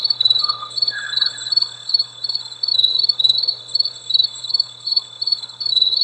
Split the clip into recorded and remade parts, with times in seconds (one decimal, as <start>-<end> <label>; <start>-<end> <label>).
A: 0.0-6.0 remade